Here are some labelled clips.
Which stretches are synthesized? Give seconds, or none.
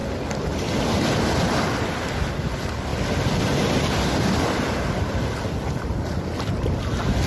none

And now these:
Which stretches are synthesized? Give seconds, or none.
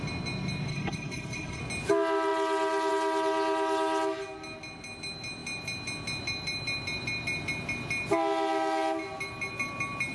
0.7-1.6 (codec, HILCodec)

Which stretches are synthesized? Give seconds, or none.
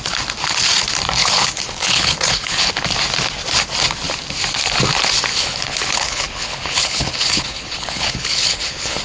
1.2-2.7 (codec, HILCodec); 5.3-9.0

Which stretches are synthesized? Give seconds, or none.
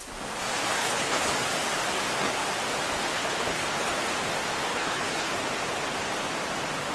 0.8-1.3 (codec, HILCodec); 3.1-4.0; 4.7-5.3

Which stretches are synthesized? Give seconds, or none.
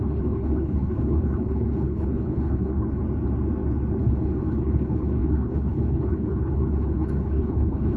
0.0-3.0 (codec, HILCodec); 4.0-8.0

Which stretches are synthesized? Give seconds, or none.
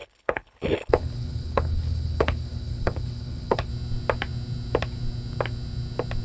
0.0-3.7 (codec, HILCodec)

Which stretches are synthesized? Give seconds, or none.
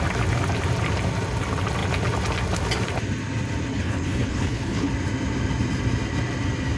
3.7-4.9 (codec, HILCodec)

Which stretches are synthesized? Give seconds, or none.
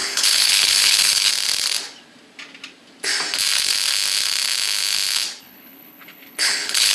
0.0-1.3 (codec, HILCodec); 5.4-6.9